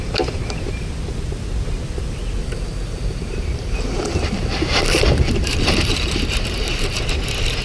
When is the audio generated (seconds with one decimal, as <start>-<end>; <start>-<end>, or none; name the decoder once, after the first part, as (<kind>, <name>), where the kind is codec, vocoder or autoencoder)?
2.4-7.0 (vocoder, BigVGAN v2)

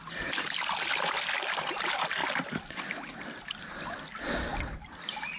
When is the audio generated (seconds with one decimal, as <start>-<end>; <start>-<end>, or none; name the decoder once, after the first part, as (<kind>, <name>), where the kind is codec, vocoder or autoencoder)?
none